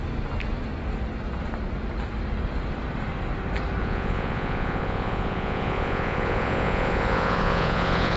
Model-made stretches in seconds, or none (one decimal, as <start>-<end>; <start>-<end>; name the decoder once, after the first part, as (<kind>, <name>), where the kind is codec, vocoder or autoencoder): 3.8-8.2 (vocoder, Vocos)